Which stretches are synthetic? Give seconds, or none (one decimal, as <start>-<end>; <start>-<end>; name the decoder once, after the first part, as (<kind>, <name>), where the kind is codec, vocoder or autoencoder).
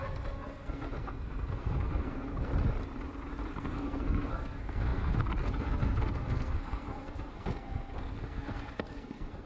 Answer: 0.0-2.5 (codec, SNAC); 3.6-9.5